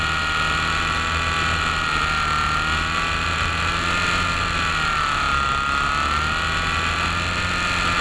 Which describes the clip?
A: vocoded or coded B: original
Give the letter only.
B